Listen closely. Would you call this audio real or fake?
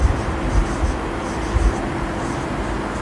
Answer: real